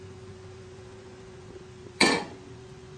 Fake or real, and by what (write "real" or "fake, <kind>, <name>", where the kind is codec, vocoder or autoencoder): fake, vocoder, Vocos